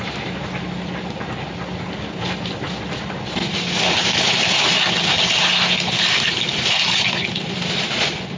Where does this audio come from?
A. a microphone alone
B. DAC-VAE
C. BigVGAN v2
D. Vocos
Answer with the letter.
A